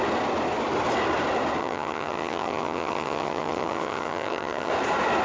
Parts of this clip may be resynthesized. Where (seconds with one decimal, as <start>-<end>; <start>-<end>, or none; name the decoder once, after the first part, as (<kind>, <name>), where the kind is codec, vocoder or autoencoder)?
1.6-4.7 (vocoder, HiFi-GAN)